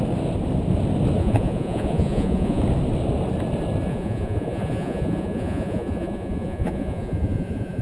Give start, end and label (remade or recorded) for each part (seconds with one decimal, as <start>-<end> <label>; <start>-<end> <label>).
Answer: 0.0-1.2 recorded; 1.2-2.6 remade; 2.6-3.9 recorded; 3.9-7.8 remade